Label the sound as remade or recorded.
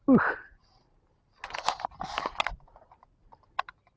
recorded